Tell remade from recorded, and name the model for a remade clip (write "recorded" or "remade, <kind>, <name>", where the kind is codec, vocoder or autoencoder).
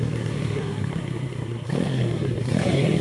remade, codec, SNAC